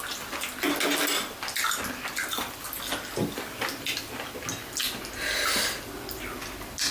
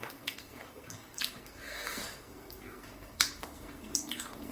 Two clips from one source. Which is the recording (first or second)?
first